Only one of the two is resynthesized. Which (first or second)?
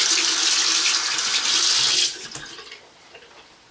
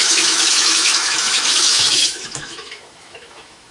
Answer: second